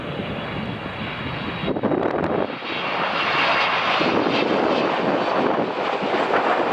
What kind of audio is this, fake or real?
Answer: real